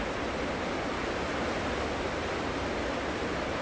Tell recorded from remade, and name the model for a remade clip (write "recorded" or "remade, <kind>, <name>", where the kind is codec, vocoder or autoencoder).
recorded